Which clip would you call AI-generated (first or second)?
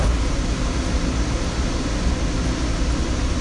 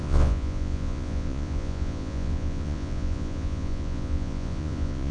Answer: second